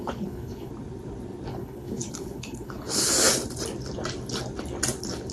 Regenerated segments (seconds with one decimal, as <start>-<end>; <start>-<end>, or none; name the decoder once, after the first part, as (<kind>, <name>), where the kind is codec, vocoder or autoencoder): 0.0-0.7 (codec, HILCodec); 1.5-3.1